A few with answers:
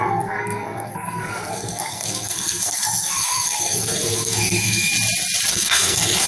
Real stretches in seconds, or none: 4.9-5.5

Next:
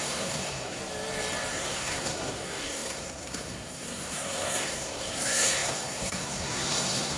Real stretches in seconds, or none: 0.8-1.5

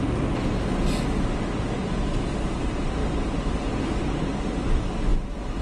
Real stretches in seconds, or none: 0.0-5.6

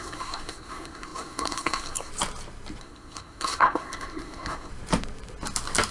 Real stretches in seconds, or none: 2.1-2.8; 4.7-5.9

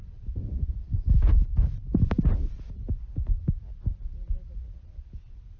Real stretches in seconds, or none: 0.0-5.6

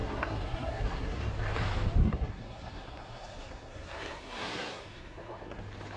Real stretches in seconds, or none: 1.2-2.0; 5.6-6.0